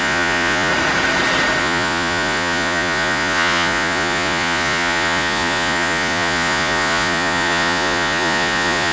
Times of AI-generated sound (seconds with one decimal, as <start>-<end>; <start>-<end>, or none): 0.0-0.7; 1.6-8.9